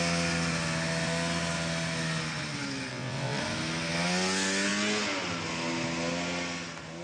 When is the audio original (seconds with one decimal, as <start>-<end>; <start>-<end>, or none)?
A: 0.0-2.9; 3.4-7.0